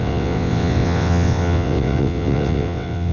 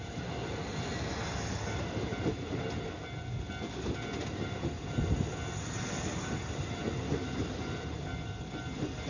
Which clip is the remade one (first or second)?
first